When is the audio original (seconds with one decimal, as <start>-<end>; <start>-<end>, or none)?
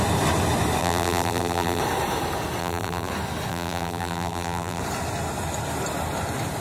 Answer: 0.0-0.8; 1.8-2.6; 3.1-3.5; 4.8-6.6